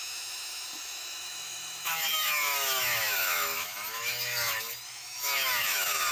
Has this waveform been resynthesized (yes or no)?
yes